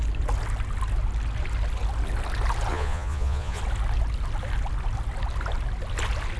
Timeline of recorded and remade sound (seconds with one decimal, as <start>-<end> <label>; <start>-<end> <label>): 0.0-2.7 recorded; 2.7-3.6 remade; 3.6-6.4 recorded